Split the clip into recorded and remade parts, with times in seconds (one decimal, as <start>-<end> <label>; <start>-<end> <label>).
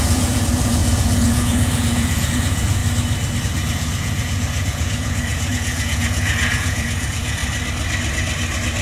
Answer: 0.0-2.8 remade; 2.8-3.4 recorded; 3.4-7.4 remade; 7.4-8.8 recorded